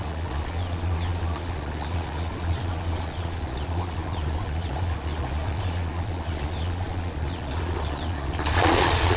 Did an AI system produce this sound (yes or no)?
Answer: yes